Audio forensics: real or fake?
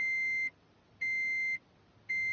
real